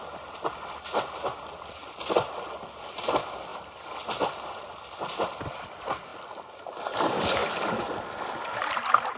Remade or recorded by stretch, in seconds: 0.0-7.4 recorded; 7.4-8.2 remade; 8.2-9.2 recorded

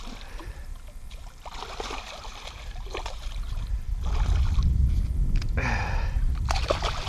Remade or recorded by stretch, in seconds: 0.0-0.4 recorded; 0.4-1.3 remade; 1.3-2.3 recorded; 2.3-3.8 remade; 3.8-7.1 recorded

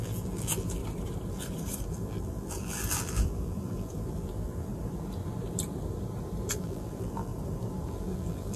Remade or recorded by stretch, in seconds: 0.0-0.8 remade; 0.8-1.9 recorded; 1.9-4.7 remade; 4.7-6.5 recorded; 6.5-7.3 remade; 7.3-7.9 recorded; 7.9-8.6 remade

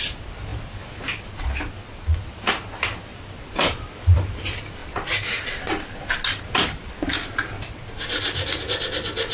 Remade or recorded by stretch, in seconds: 0.0-3.1 recorded; 3.1-4.0 remade; 4.0-9.3 recorded

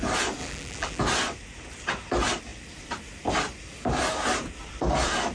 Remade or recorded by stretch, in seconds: 0.0-0.4 recorded; 0.4-1.0 remade; 1.0-5.3 recorded

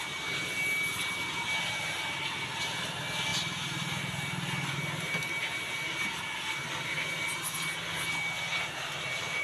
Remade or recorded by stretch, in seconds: 0.0-9.4 recorded

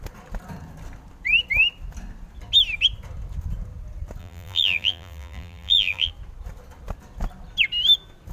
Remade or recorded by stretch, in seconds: 0.0-4.2 recorded; 4.2-6.1 remade; 6.1-8.3 recorded